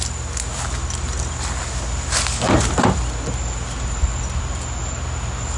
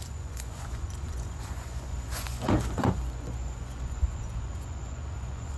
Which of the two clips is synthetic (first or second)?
second